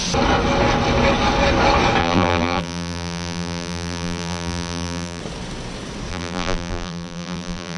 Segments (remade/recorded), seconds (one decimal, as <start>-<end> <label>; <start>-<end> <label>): 0.0-2.0 recorded; 2.0-5.2 remade; 5.2-6.1 recorded; 6.1-7.8 remade